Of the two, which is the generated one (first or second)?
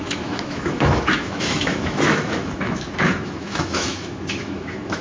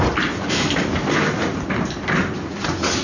first